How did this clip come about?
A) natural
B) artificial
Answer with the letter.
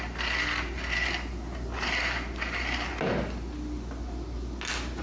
A